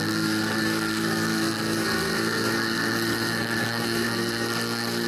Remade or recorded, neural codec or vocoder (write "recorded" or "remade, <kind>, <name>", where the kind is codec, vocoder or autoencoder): remade, codec, SNAC